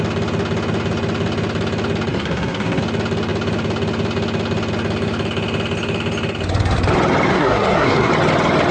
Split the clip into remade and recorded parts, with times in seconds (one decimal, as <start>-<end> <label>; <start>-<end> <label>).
0.0-2.1 recorded; 2.1-2.8 remade; 2.8-7.3 recorded; 7.3-8.1 remade; 8.1-8.7 recorded